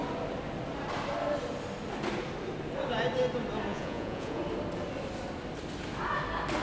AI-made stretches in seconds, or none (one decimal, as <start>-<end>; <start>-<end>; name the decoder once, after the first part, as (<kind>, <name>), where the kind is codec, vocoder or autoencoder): 3.7-4.4 (vocoder, Vocos)